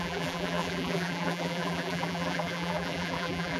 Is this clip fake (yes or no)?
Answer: yes